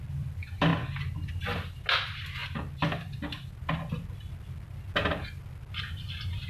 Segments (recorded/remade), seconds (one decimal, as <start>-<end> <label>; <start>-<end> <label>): 0.0-6.5 recorded